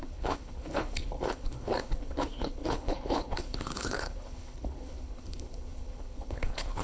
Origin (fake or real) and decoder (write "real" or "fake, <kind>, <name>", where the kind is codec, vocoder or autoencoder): fake, codec, HILCodec